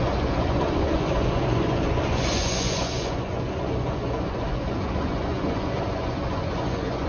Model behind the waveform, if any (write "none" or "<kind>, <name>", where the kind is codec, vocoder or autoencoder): vocoder, Vocos